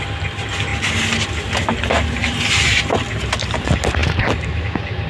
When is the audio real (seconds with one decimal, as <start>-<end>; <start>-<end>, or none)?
0.0-5.1